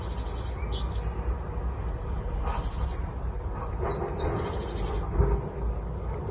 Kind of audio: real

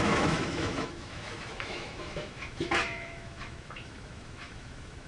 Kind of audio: fake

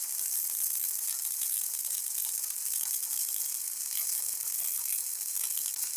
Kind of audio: real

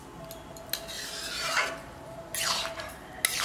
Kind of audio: real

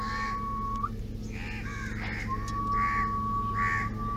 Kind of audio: real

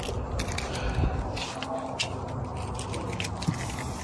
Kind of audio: real